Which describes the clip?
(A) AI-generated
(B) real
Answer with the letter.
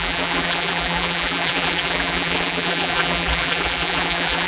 A